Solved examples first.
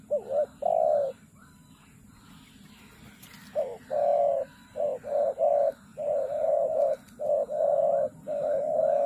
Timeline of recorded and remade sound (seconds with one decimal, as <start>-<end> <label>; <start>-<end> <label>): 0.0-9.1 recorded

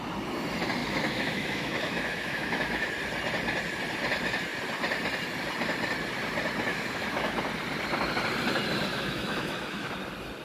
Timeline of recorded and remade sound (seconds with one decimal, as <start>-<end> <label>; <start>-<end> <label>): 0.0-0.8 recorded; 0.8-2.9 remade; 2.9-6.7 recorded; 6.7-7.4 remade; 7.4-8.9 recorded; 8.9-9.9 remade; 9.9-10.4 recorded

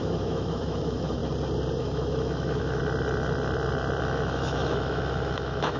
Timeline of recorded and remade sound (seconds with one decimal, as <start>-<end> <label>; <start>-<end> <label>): 0.0-1.2 remade; 1.2-1.8 recorded; 1.8-2.8 remade; 2.8-4.0 recorded; 4.0-5.8 remade

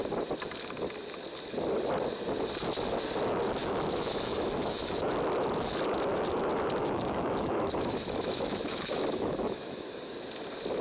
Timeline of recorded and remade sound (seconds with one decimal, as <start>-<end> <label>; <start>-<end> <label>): 0.0-3.6 recorded; 3.6-5.1 remade; 5.1-6.8 recorded; 6.8-10.1 remade; 10.1-10.8 recorded